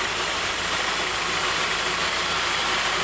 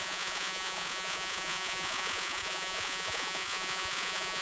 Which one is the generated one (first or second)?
second